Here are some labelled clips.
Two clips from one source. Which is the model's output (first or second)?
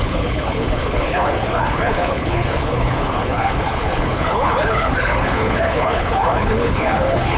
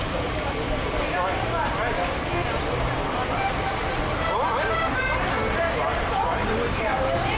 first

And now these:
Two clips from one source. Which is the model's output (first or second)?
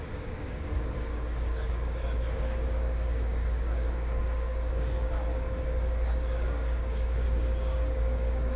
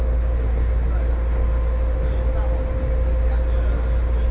first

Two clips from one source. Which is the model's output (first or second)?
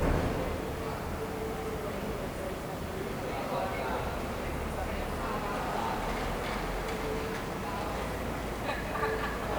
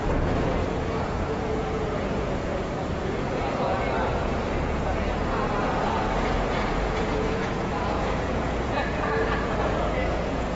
second